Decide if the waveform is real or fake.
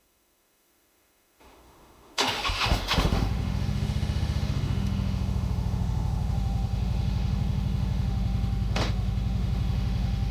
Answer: fake